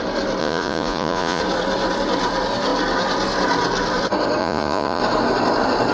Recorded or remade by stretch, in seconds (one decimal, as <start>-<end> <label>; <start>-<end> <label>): 0.0-0.4 recorded; 0.4-1.4 remade; 1.4-4.4 recorded; 4.4-5.0 remade; 5.0-5.9 recorded